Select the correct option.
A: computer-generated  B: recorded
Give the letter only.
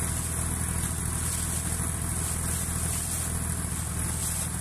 B